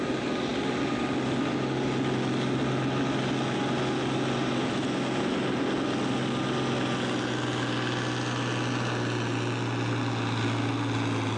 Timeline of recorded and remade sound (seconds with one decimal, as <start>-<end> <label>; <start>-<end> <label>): 0.0-11.4 recorded